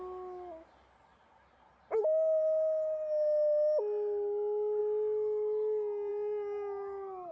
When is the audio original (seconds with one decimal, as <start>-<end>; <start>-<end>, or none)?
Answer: 0.0-7.3